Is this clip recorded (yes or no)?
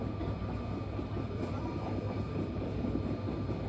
no